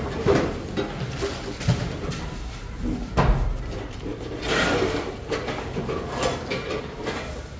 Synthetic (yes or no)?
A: no